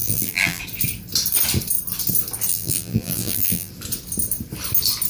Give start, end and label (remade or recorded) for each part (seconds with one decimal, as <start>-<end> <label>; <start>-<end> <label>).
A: 0.0-0.6 remade; 0.6-2.5 recorded; 2.5-3.7 remade; 3.7-5.1 recorded